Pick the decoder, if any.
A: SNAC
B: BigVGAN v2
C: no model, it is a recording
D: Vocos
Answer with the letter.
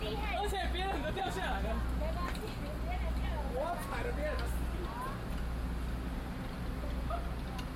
C